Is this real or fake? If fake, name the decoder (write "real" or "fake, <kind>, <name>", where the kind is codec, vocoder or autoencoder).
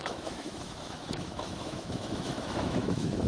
fake, autoencoder, DAC-VAE